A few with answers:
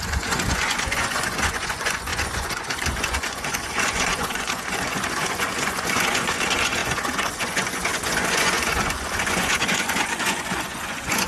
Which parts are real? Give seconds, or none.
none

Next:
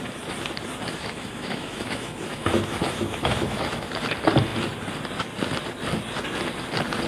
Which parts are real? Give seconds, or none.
0.0-0.9; 3.9-7.1

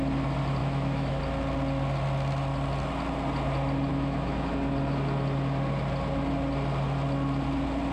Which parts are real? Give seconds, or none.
0.0-0.6; 1.2-3.9; 4.5-7.9

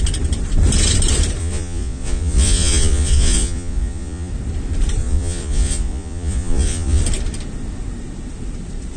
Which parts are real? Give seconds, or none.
0.0-1.4; 4.3-5.0; 7.0-9.0